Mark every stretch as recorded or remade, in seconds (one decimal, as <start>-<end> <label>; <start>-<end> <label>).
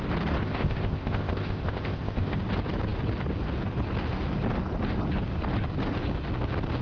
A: 0.0-0.4 recorded; 0.4-2.4 remade; 2.4-6.8 recorded